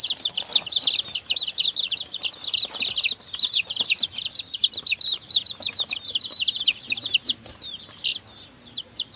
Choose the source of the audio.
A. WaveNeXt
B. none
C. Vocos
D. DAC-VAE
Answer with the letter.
B